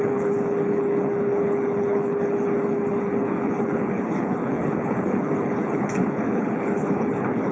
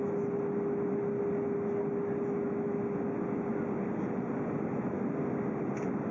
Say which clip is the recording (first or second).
second